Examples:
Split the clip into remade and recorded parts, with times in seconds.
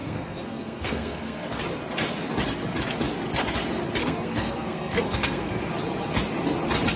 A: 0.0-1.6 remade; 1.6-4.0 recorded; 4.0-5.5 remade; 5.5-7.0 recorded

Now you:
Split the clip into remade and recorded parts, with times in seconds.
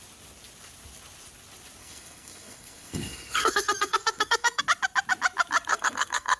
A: 0.0-1.8 recorded; 1.8-4.6 remade; 4.6-5.7 recorded; 5.7-6.4 remade